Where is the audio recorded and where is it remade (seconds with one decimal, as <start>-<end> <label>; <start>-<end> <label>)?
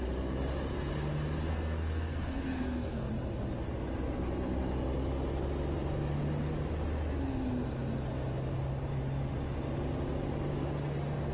0.0-1.5 recorded; 1.5-3.1 remade; 3.1-11.3 recorded